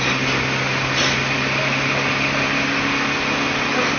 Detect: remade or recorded recorded